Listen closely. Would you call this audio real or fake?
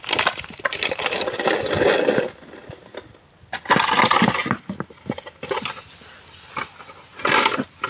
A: real